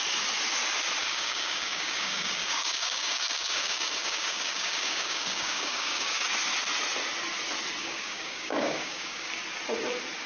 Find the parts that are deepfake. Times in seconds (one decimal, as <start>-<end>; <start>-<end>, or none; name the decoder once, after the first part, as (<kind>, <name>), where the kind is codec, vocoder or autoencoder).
1.0-6.2 (codec, DAC); 7.8-9.3